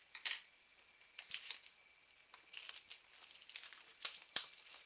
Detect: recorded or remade recorded